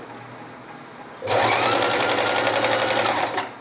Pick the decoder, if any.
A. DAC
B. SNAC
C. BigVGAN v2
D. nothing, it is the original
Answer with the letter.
D